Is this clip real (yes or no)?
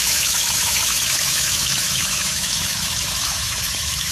no